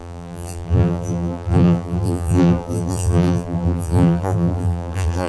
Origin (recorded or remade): remade